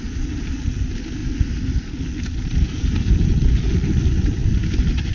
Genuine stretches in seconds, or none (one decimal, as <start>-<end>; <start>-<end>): 0.0-5.1